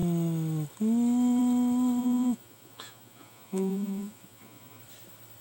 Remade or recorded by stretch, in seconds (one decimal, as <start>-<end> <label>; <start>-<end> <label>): 0.0-2.0 recorded; 2.0-4.8 remade; 4.8-5.4 recorded